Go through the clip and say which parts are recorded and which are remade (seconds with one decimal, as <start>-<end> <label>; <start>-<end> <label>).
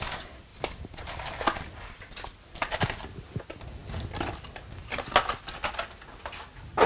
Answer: 0.0-6.9 recorded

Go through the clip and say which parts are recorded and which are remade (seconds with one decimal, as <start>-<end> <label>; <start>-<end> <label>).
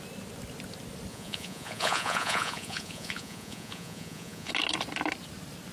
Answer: 0.0-1.1 recorded; 1.1-4.5 remade; 4.5-5.7 recorded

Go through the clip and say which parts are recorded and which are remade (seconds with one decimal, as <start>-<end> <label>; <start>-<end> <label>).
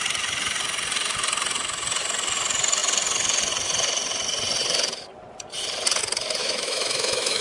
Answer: 0.0-6.4 recorded; 6.4-7.4 remade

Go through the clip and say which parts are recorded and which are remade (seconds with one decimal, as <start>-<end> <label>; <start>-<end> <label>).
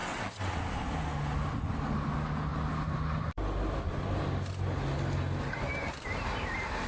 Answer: 0.0-0.6 remade; 0.6-6.9 recorded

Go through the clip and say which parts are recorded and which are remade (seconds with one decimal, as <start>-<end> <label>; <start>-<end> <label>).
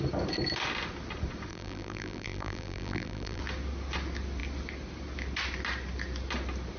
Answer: 0.0-1.5 recorded; 1.5-3.4 remade; 3.4-6.8 recorded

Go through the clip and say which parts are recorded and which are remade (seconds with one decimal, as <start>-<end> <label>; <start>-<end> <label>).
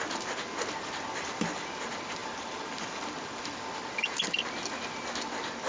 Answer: 0.0-2.2 recorded; 2.2-2.7 remade; 2.7-5.7 recorded